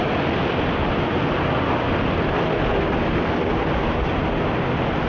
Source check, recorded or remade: recorded